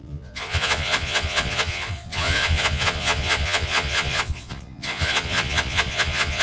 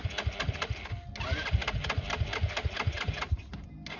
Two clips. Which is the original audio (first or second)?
second